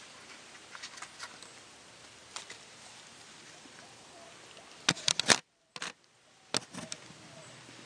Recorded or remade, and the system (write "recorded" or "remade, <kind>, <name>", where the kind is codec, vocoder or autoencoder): recorded